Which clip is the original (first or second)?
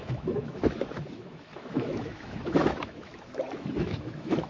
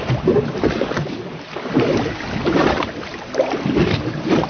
second